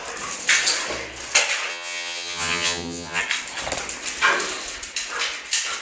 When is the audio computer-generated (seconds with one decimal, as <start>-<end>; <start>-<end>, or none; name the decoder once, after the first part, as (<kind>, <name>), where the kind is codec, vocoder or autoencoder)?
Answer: 1.7-3.2 (vocoder, HiFi-GAN)

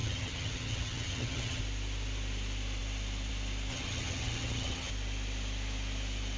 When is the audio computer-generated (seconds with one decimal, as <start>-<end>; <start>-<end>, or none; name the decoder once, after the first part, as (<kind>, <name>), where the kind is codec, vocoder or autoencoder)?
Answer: 0.0-1.6 (vocoder, HiFi-GAN); 3.7-4.9

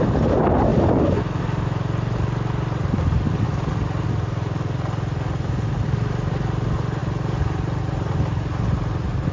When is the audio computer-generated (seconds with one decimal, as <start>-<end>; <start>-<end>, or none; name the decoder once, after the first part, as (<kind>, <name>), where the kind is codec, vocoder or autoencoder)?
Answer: none

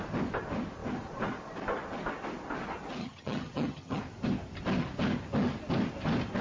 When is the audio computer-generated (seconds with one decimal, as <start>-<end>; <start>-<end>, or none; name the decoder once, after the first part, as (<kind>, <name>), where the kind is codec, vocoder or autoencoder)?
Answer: 3.0-4.0 (vocoder, HiFi-GAN)

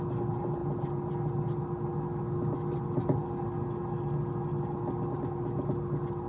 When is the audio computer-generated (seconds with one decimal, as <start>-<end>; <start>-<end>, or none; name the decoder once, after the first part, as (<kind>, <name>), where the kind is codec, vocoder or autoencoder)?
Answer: none

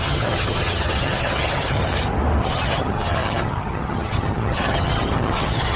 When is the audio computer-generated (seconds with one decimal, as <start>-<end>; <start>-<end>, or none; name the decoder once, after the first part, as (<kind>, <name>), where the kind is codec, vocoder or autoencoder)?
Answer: 0.0-1.8 (vocoder, HiFi-GAN); 2.4-5.8